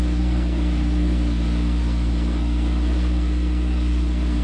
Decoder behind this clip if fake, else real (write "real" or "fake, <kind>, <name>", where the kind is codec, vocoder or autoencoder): fake, codec, SNAC